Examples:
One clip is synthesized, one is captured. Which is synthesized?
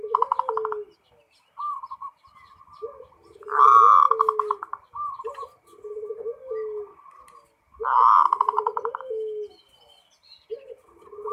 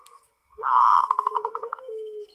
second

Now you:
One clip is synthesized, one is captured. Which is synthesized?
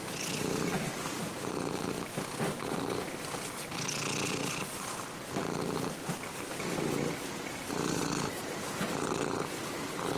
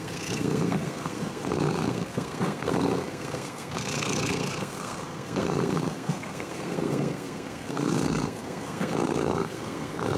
second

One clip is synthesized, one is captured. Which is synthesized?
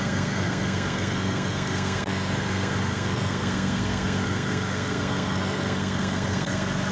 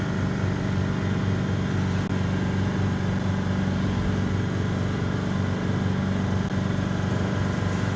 first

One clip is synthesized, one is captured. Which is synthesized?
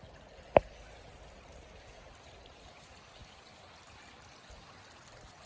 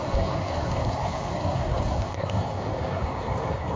second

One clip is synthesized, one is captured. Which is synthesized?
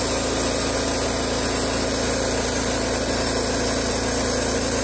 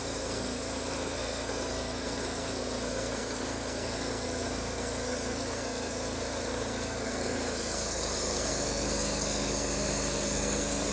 second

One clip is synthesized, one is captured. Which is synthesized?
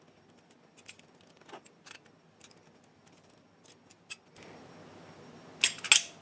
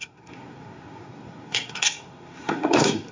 second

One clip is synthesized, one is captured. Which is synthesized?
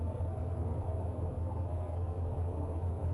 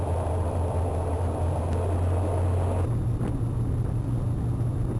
first